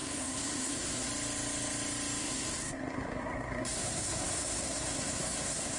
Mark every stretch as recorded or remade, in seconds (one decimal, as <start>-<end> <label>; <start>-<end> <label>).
0.0-1.1 remade; 1.1-2.2 recorded; 2.2-5.8 remade